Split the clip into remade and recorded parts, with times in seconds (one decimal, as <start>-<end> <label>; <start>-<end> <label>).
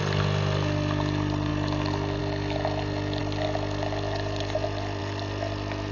0.0-5.9 recorded